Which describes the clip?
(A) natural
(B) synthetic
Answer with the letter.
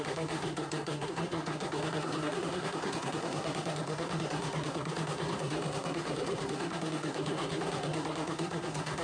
B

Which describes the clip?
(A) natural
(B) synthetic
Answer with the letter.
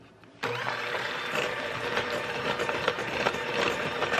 B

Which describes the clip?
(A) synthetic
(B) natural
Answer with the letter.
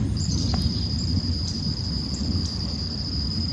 A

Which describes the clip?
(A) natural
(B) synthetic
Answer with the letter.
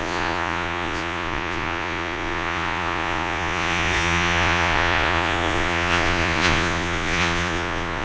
B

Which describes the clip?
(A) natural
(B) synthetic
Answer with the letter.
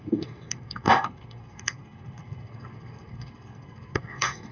B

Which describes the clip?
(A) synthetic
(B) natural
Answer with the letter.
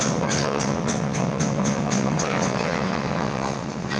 A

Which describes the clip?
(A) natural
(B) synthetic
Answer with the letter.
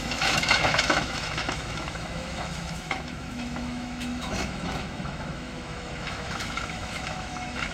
B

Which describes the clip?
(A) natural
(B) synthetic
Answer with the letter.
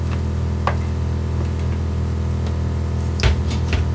A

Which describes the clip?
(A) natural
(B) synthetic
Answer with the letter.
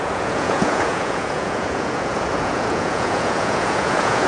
B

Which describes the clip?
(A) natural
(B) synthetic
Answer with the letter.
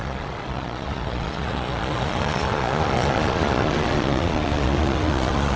B